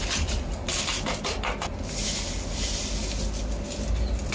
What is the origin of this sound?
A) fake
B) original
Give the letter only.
B